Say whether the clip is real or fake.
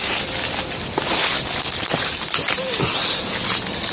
real